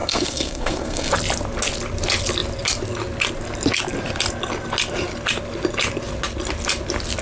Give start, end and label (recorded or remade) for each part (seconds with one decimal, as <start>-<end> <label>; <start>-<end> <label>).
0.0-1.1 remade; 1.1-7.2 recorded